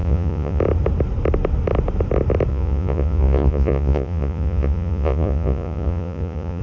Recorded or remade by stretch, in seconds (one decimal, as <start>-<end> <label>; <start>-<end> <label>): 0.0-0.6 remade; 0.6-2.5 recorded; 2.5-6.6 remade